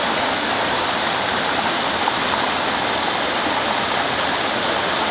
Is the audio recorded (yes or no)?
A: yes